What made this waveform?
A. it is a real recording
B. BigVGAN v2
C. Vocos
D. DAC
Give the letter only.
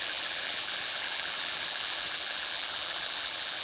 B